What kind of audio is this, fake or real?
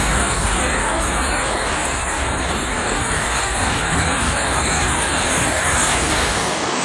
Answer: fake